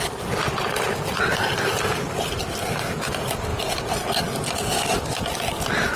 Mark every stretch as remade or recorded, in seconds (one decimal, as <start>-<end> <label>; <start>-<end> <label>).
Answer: 0.0-6.0 recorded